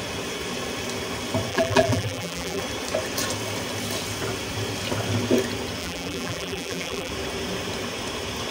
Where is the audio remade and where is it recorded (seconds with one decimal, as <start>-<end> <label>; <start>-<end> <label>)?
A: 0.0-1.5 recorded; 1.5-2.6 remade; 2.6-5.8 recorded; 5.8-7.1 remade; 7.1-8.5 recorded